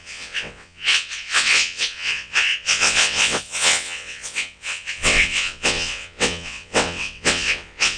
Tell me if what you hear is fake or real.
fake